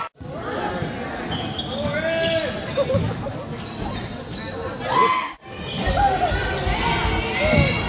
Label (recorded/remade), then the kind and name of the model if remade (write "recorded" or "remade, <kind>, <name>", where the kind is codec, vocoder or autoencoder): recorded